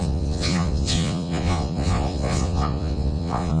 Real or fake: fake